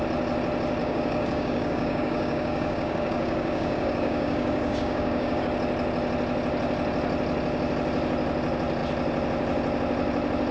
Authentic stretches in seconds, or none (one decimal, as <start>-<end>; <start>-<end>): 0.0-0.8; 5.4-10.5

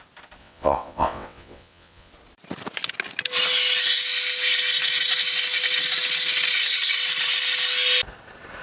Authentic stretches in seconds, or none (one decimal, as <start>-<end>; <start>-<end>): 0.0-0.4; 2.1-8.6

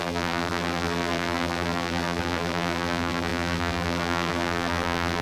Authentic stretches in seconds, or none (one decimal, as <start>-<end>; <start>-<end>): none

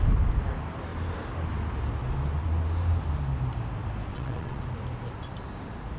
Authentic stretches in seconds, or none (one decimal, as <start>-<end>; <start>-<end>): 0.0-4.1; 4.6-6.0

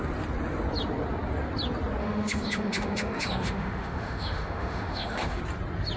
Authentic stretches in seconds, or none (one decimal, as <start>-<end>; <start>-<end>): 0.0-2.0; 5.4-6.0

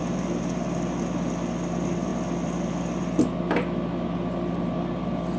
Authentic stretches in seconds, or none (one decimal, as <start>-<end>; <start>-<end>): 0.0-5.4